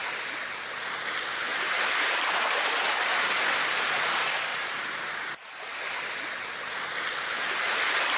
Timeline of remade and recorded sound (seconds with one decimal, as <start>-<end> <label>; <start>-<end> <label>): 0.0-1.5 recorded; 1.5-2.8 remade; 2.8-4.5 recorded; 4.5-5.0 remade; 5.0-8.2 recorded

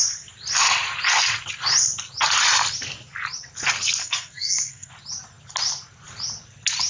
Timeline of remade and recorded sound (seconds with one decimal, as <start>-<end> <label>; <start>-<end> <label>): 0.0-4.0 recorded; 4.0-4.9 remade; 4.9-6.9 recorded